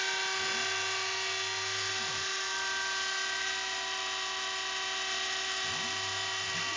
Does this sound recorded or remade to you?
recorded